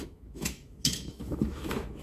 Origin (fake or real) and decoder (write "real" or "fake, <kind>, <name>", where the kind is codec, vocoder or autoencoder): fake, autoencoder, DAC-VAE